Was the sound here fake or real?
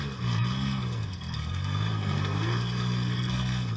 fake